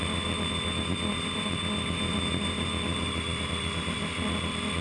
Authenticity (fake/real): fake